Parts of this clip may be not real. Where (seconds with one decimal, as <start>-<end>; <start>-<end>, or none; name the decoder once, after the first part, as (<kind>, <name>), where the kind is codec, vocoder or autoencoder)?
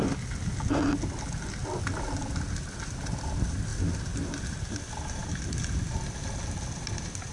none